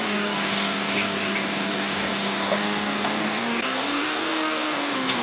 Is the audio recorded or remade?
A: remade